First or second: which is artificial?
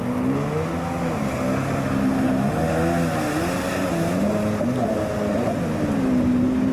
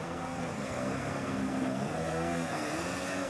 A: second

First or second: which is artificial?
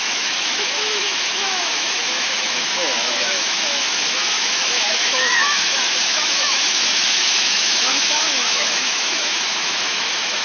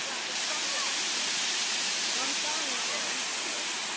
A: first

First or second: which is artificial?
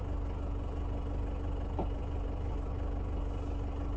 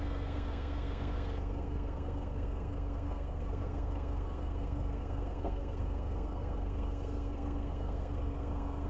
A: second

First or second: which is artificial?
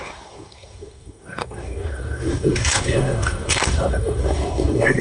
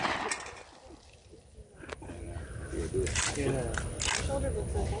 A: first